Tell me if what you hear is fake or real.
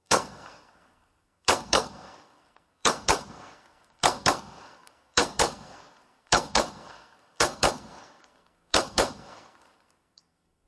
fake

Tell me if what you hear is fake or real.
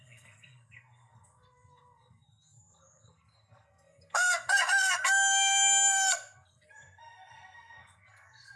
fake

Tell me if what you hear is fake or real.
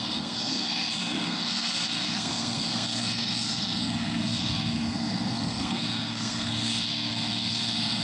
fake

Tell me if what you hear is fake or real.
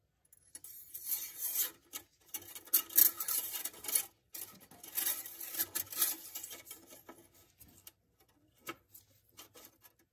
real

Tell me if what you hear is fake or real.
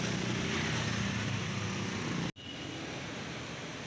real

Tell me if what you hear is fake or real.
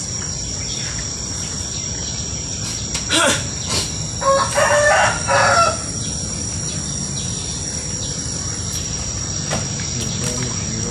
real